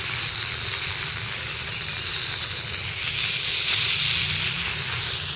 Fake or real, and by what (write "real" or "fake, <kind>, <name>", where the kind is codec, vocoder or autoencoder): real